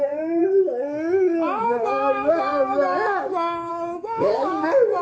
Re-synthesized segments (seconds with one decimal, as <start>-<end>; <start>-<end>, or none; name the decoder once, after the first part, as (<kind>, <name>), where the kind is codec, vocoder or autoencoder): 0.0-0.4 (codec, DAC); 1.6-5.0